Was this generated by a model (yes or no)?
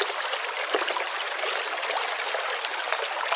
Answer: no